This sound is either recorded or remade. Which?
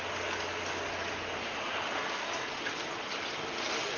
recorded